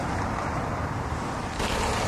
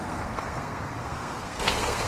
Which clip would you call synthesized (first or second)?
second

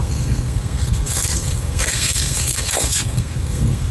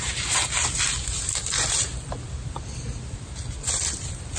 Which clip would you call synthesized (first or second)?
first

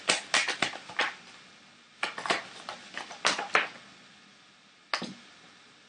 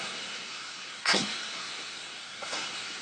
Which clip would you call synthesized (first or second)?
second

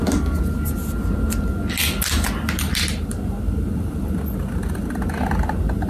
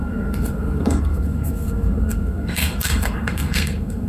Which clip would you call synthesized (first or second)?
second